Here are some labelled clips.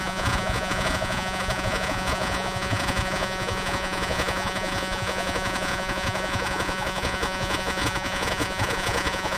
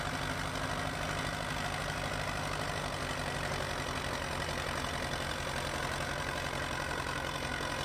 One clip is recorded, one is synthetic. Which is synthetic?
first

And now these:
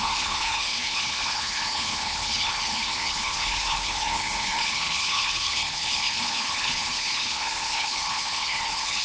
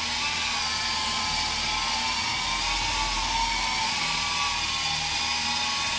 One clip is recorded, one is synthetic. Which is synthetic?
first